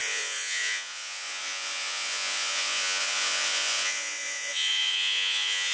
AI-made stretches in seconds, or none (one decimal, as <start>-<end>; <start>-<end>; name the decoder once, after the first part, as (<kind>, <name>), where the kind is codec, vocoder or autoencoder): 0.0-5.7 (vocoder, Vocos)